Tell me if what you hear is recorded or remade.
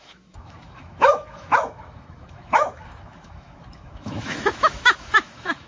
remade